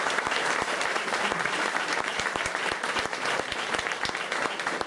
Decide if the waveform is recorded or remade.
remade